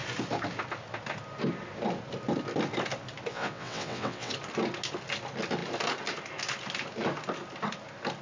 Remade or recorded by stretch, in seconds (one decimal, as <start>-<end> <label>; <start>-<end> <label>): 0.0-3.3 recorded; 3.3-4.3 remade; 4.3-8.2 recorded